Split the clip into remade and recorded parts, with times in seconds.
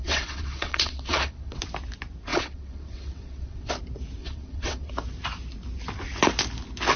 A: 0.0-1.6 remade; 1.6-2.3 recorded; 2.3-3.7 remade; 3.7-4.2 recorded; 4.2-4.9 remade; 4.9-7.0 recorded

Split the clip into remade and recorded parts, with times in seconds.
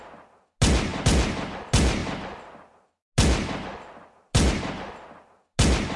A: 0.0-6.0 recorded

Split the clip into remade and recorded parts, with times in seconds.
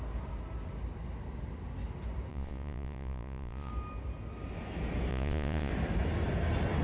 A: 0.0-2.3 recorded; 2.3-3.7 remade; 3.7-5.1 recorded; 5.1-5.7 remade; 5.7-6.8 recorded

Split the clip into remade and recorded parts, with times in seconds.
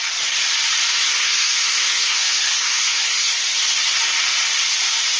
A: 0.0-0.9 recorded; 0.9-3.3 remade; 3.3-5.2 recorded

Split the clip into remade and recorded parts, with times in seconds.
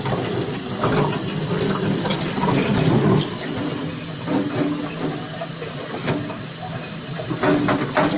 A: 0.0-2.1 recorded; 2.1-6.1 remade; 6.1-8.2 recorded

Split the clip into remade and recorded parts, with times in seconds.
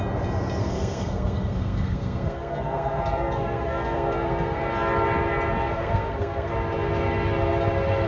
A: 0.0-0.6 recorded; 0.6-4.6 remade; 4.6-5.7 recorded; 5.7-6.5 remade; 6.5-8.1 recorded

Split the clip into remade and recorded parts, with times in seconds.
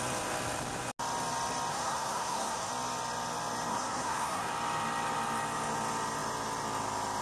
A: 0.0-1.7 recorded; 1.7-2.7 remade; 2.7-3.7 recorded; 3.7-4.5 remade; 4.5-7.2 recorded